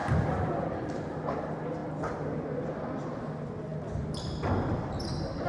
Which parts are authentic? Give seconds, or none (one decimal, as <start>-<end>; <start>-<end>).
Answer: 0.0-0.6; 3.7-4.5

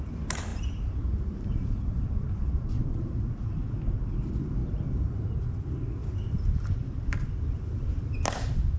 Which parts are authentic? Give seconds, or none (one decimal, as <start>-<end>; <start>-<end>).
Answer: 0.0-0.5; 3.3-4.6; 5.3-8.8

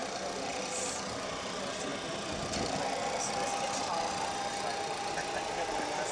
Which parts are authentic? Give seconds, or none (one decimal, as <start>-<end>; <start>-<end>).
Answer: 0.6-6.1

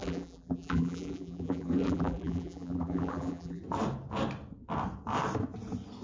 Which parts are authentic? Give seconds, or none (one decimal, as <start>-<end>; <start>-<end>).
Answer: 3.6-6.0

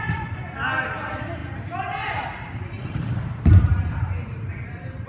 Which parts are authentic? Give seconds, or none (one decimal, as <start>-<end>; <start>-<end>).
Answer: none

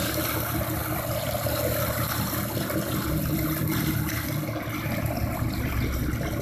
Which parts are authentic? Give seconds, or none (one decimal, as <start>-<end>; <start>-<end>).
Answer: 0.0-6.4